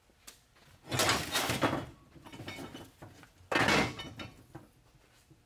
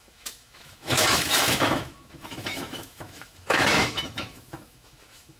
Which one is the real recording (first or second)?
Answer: first